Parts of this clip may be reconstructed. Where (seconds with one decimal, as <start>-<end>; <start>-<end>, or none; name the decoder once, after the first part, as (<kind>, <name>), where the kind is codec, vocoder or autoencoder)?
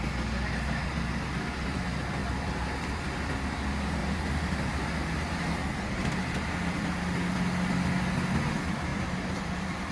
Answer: 2.2-3.0 (vocoder, BigVGAN v2); 4.0-6.5; 8.9-9.9